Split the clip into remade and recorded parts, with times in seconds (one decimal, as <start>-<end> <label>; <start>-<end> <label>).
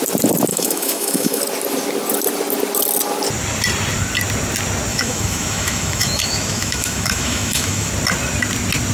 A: 0.0-0.5 recorded; 0.5-1.4 remade; 1.4-4.9 recorded; 4.9-7.9 remade; 7.9-8.9 recorded